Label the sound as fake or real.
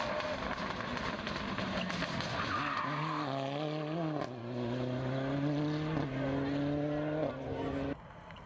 real